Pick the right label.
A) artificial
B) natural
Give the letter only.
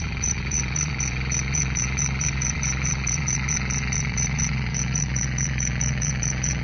A